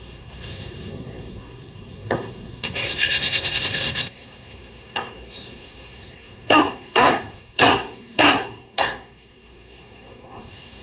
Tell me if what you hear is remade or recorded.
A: remade